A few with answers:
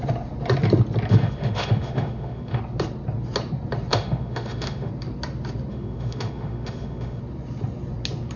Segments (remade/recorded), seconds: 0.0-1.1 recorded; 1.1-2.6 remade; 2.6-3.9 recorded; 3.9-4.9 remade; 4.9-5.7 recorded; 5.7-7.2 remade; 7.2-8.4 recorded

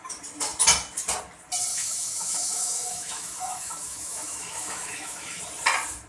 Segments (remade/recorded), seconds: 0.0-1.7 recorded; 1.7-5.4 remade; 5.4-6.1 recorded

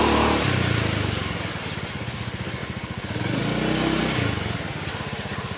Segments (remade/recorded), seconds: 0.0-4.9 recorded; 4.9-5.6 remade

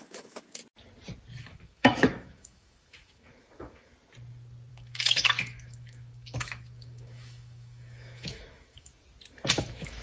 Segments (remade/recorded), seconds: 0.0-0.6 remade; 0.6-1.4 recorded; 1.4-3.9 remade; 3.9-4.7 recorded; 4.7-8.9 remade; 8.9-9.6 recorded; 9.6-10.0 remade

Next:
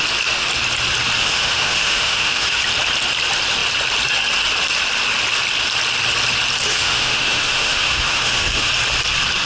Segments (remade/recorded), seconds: 0.0-1.2 recorded; 1.2-2.6 remade; 2.6-6.7 recorded; 6.7-8.7 remade; 8.7-9.5 recorded

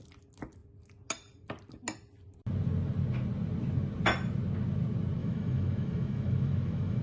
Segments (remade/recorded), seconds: 0.0-5.2 recorded; 5.2-7.0 remade